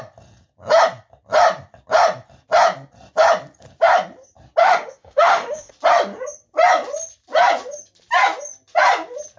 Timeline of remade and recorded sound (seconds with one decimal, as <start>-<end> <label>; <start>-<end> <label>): 0.0-4.6 recorded; 4.6-5.7 remade; 5.7-9.4 recorded